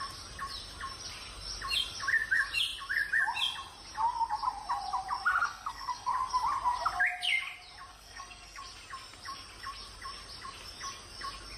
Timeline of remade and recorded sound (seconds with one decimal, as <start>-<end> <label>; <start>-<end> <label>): 0.0-5.3 recorded; 5.3-6.1 remade; 6.1-7.9 recorded; 7.9-8.6 remade; 8.6-11.6 recorded